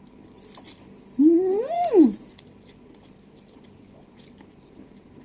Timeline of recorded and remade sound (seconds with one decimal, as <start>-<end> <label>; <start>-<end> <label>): 0.0-1.5 recorded; 1.5-2.3 remade; 2.3-5.2 recorded